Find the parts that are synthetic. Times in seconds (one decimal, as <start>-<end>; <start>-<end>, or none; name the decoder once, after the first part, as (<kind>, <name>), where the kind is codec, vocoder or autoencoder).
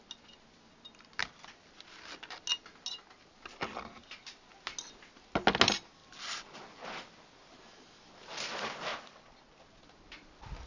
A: 6.0-7.2 (vocoder, BigVGAN v2); 8.9-9.6